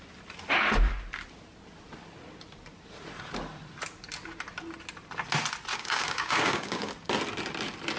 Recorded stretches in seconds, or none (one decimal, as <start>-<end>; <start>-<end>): 0.0-5.7; 6.9-8.0